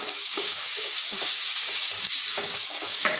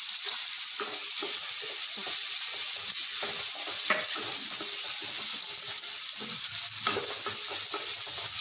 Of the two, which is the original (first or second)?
second